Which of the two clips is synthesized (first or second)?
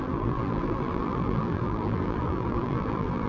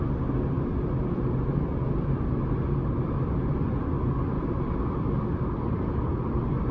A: first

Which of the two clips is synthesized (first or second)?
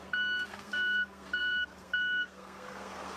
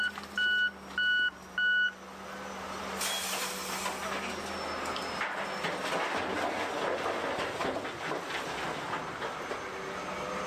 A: first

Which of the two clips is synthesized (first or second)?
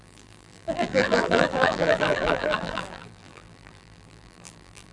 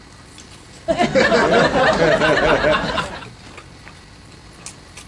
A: first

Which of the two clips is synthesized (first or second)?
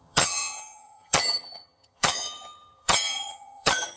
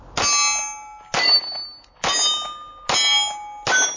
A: first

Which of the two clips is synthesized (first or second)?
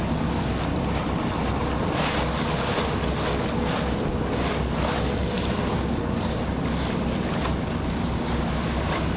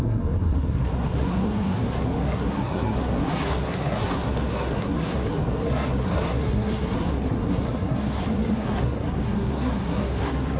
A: second